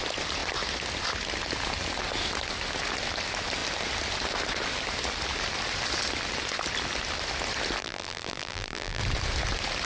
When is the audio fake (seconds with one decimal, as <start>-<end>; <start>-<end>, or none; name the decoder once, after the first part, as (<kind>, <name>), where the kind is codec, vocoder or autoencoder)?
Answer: 7.8-9.0 (vocoder, BigVGAN v2)